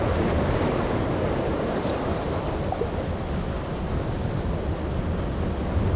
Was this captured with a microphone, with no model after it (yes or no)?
yes